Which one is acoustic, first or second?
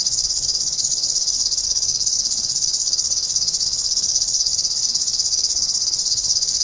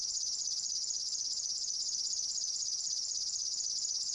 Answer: second